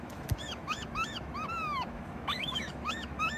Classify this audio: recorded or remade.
remade